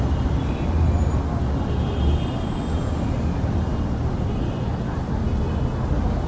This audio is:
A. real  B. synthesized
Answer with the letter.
A